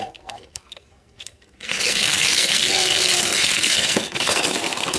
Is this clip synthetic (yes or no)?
yes